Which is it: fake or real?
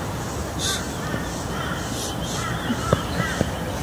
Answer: real